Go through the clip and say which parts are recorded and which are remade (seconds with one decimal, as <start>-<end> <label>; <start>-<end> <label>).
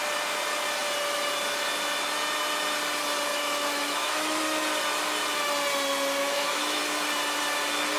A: 0.0-3.3 recorded; 3.3-4.4 remade; 4.4-6.2 recorded; 6.2-6.8 remade; 6.8-8.0 recorded